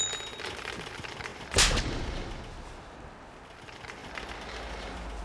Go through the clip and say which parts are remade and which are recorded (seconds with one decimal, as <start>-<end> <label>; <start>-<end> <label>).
0.0-5.2 recorded